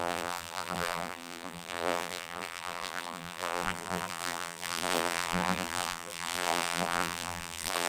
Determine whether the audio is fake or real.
fake